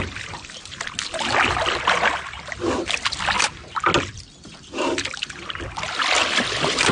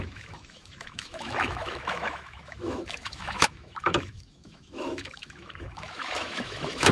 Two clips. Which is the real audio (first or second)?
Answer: first